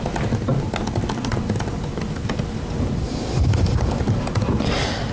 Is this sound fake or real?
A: real